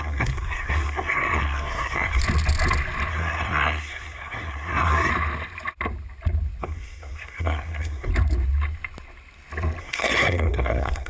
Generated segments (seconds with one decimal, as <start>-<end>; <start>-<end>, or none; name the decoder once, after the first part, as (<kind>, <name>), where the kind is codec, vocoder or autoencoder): 0.0-2.2 (codec, SNAC); 3.1-5.1; 6.6-8.1; 9.8-11.1